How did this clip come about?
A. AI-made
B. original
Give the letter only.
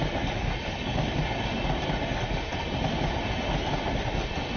B